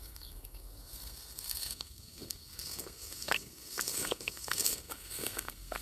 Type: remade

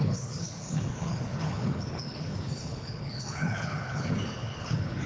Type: remade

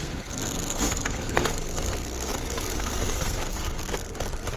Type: remade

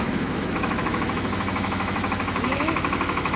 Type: remade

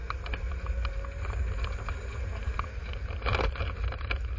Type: recorded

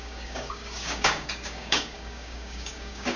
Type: remade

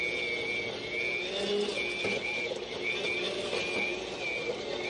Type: recorded